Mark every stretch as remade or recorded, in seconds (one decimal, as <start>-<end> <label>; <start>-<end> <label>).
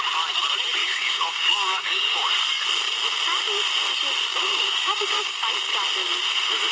0.0-0.8 recorded; 0.8-2.3 remade; 2.3-4.3 recorded; 4.3-5.4 remade; 5.4-6.7 recorded